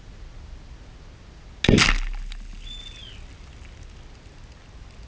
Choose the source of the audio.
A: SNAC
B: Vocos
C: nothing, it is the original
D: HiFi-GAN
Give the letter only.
C